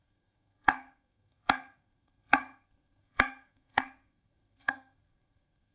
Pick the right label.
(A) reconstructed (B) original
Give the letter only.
A